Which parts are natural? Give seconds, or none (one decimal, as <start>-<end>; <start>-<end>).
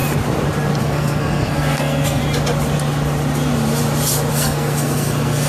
0.0-0.8; 2.2-4.3